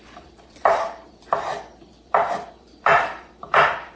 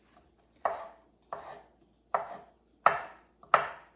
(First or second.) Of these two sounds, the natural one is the second